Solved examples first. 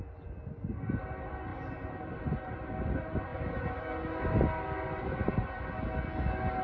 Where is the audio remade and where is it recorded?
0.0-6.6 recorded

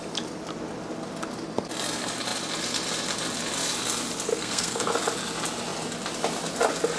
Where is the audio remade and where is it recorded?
0.0-4.3 recorded; 4.3-4.9 remade; 4.9-7.0 recorded

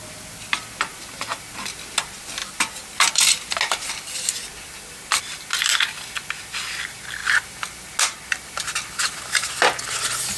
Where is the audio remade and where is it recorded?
0.0-10.4 recorded